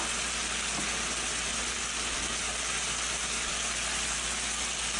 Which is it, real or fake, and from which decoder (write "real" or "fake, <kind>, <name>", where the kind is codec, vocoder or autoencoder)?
real